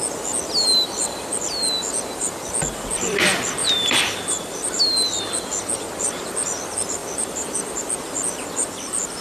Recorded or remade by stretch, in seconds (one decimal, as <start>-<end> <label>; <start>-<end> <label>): 0.0-3.6 recorded; 3.6-4.8 remade; 4.8-7.0 recorded; 7.0-7.8 remade; 7.8-9.2 recorded